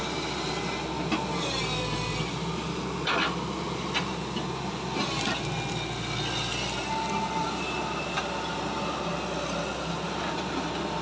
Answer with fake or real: real